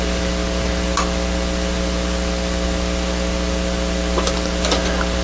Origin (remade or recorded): recorded